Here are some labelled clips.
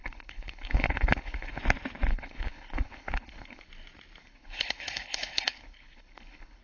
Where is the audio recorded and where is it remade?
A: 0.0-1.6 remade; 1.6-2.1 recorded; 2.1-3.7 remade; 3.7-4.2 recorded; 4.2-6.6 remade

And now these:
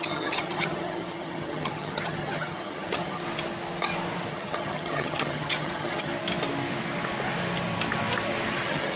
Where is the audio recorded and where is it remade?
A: 0.0-3.2 remade; 3.2-4.3 recorded; 4.3-6.1 remade; 6.1-8.5 recorded; 8.5-9.0 remade